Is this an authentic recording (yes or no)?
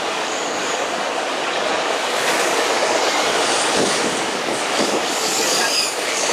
no